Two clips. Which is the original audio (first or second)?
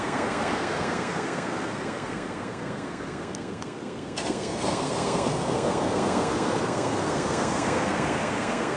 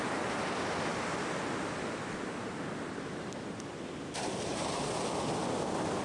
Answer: second